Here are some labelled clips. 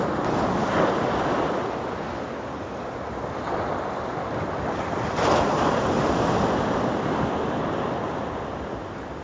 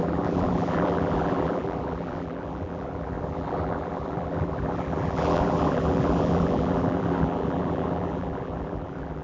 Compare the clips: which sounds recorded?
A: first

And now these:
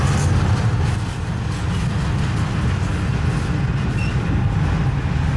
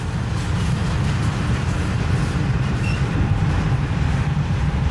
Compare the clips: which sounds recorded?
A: first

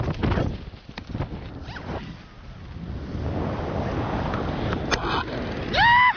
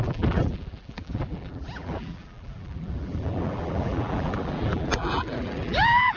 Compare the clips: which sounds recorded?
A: first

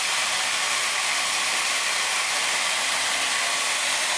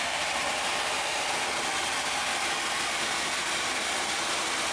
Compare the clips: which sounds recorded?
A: second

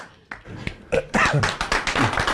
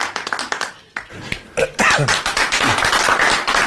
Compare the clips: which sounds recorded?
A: second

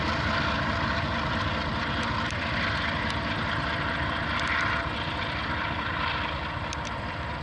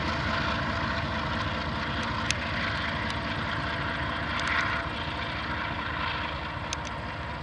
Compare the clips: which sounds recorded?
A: second